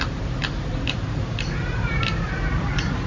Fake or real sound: real